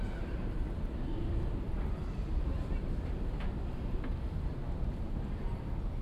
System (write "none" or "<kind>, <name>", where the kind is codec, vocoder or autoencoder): none